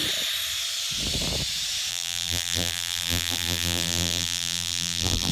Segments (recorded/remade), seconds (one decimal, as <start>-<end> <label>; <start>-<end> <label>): 0.0-1.9 recorded; 1.9-5.3 remade